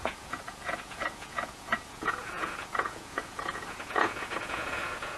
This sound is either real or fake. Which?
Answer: fake